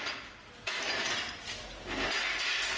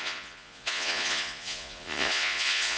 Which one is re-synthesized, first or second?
second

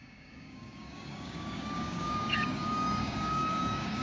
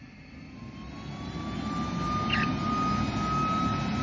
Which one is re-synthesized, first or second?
first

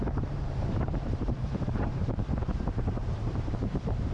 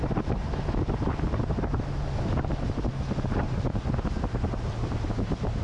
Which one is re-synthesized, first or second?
first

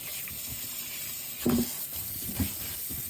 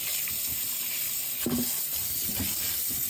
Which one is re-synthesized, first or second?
first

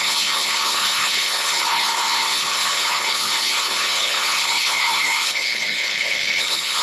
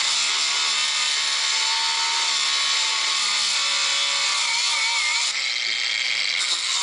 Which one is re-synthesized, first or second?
first